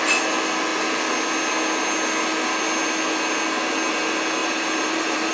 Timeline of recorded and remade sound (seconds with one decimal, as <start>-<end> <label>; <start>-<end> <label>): 0.0-4.4 recorded; 4.4-5.3 remade